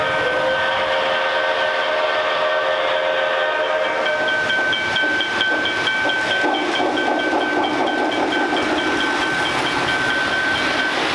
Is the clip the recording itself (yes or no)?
yes